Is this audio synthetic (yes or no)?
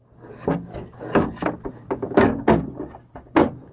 no